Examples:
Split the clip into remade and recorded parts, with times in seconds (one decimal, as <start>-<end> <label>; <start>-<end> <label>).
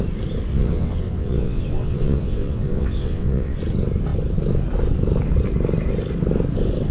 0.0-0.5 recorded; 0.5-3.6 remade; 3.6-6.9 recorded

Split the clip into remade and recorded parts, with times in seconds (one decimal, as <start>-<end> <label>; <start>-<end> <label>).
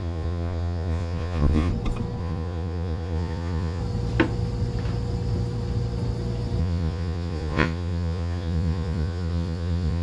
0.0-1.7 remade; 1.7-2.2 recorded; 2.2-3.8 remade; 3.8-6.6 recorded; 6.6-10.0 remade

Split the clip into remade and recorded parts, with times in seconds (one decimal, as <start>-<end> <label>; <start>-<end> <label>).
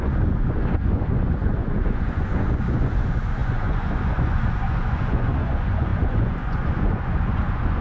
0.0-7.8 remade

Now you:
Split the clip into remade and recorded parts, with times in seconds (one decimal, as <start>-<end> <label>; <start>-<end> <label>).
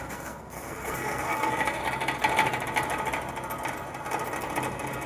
0.0-1.8 remade; 1.8-5.1 recorded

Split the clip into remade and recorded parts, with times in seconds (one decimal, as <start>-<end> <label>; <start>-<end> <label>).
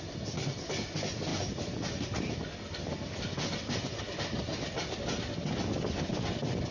0.0-6.7 recorded